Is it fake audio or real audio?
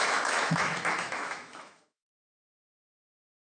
fake